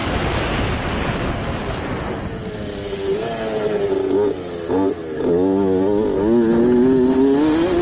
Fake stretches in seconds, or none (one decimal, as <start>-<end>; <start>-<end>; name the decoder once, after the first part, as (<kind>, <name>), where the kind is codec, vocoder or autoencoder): none